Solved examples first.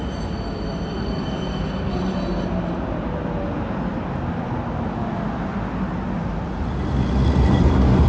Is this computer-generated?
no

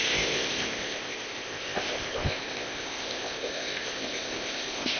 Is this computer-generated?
yes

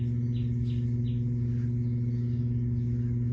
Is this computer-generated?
no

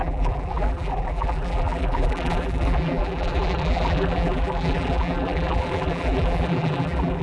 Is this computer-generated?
yes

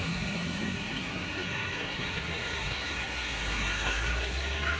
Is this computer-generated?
yes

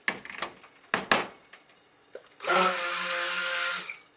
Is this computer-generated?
no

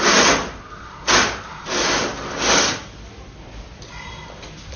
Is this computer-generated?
no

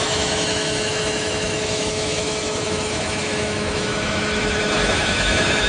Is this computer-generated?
yes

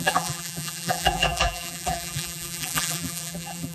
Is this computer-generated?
yes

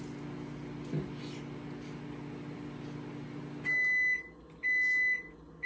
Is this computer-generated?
no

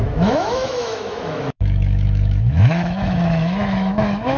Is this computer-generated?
yes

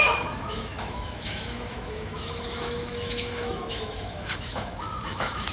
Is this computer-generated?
yes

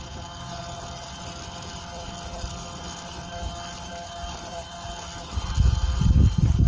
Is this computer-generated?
no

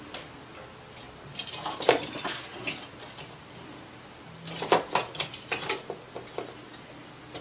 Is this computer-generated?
no